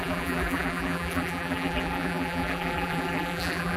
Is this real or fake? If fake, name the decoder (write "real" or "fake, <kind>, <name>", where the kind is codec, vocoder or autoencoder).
fake, vocoder, BigVGAN v2